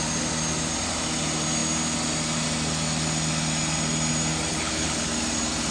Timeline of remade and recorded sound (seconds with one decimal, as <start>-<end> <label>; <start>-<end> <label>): 0.0-4.5 recorded; 4.5-5.1 remade; 5.1-5.7 recorded

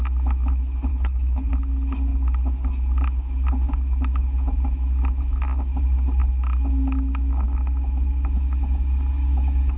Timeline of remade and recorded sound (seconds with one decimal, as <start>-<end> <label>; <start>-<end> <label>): 0.0-0.9 recorded; 0.9-1.5 remade; 1.5-9.8 recorded

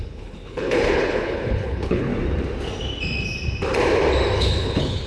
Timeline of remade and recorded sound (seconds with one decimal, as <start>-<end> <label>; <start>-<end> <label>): 0.0-2.1 remade; 2.1-4.4 recorded; 4.4-5.1 remade

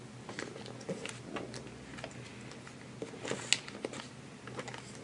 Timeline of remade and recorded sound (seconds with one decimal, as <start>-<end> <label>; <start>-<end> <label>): 0.0-5.0 recorded

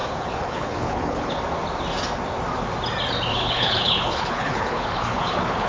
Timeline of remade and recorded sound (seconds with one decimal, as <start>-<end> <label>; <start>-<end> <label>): 0.0-1.4 remade; 1.4-3.3 recorded; 3.3-5.7 remade

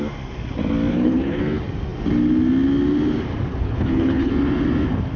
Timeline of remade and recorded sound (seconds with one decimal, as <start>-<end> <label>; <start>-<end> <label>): 0.0-0.9 recorded; 0.9-1.4 remade; 1.4-3.5 recorded; 3.5-4.3 remade; 4.3-5.2 recorded

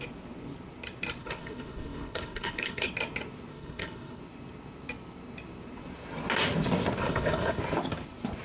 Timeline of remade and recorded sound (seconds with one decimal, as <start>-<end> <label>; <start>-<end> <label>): 0.0-1.2 recorded; 1.2-2.9 remade; 2.9-3.5 recorded; 3.5-4.2 remade; 4.2-7.0 recorded; 7.0-7.6 remade; 7.6-8.4 recorded

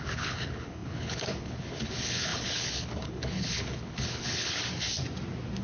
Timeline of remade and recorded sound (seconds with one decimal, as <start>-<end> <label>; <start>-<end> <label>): 0.0-4.6 remade; 4.6-5.6 recorded